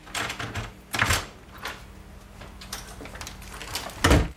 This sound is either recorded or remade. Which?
recorded